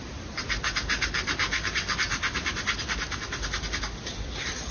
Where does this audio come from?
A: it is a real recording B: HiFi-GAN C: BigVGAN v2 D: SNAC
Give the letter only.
A